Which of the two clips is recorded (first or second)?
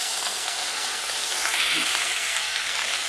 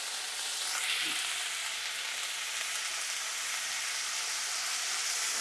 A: second